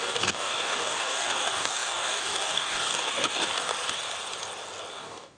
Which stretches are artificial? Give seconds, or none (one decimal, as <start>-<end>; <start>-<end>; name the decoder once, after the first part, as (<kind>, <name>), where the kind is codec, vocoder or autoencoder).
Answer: 0.0-3.7 (codec, DAC); 4.9-5.4